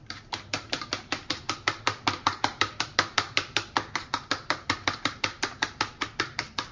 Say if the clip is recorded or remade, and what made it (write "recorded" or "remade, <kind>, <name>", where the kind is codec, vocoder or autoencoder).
remade, vocoder, BigVGAN v2